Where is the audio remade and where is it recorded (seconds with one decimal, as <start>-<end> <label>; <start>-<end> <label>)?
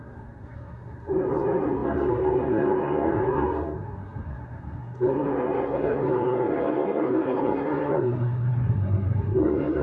0.0-9.8 remade